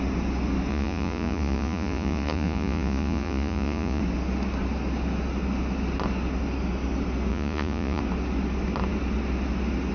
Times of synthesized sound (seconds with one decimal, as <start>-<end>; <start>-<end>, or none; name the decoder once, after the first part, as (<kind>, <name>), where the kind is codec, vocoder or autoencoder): 0.7-4.0 (vocoder, Vocos); 7.3-8.0